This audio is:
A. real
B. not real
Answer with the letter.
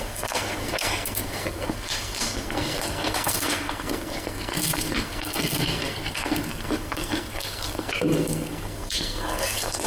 B